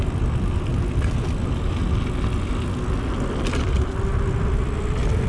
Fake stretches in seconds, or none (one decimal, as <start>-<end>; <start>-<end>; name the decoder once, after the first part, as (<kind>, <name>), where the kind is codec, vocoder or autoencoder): none